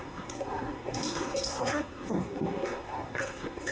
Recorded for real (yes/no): no